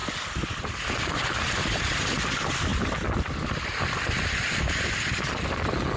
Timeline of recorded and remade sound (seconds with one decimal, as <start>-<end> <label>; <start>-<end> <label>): 0.0-6.0 recorded